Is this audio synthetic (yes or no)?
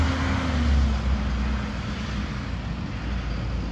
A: no